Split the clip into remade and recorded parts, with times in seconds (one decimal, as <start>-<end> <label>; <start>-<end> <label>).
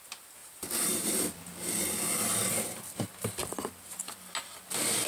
0.0-0.4 recorded; 0.4-1.4 remade; 1.4-3.4 recorded; 3.4-4.3 remade; 4.3-5.1 recorded